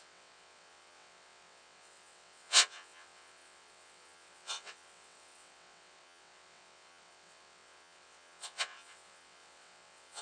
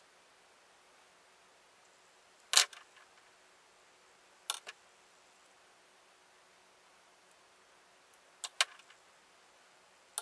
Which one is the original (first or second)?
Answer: second